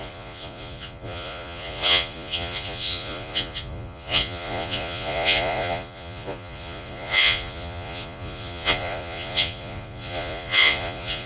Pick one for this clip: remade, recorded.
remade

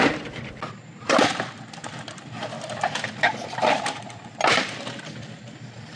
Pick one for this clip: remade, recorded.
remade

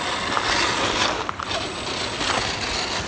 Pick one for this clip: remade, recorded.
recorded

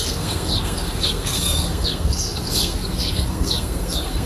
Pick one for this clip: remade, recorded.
remade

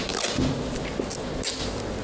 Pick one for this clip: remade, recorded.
recorded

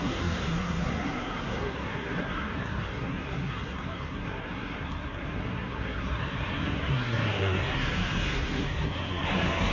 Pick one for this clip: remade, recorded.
remade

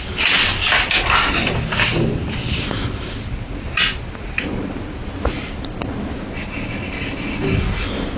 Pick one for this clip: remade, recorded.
recorded